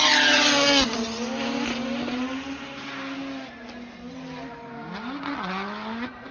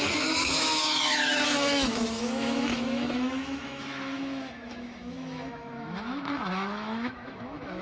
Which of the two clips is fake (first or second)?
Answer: second